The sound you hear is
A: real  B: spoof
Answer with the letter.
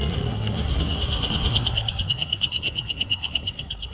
B